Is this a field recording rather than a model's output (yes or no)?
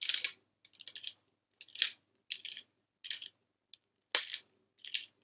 yes